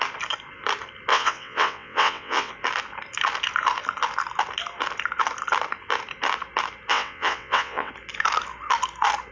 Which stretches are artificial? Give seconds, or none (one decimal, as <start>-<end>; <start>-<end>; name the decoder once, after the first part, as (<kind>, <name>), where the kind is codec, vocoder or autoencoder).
1.1-2.5 (vocoder, WaveNeXt); 6.9-7.9